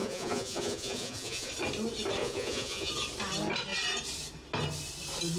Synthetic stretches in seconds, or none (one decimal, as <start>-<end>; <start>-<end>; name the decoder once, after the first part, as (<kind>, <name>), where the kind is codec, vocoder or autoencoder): 0.0-1.5 (vocoder, Vocos); 2.2-2.9